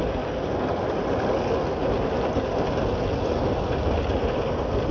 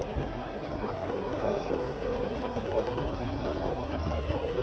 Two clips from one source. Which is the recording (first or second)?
first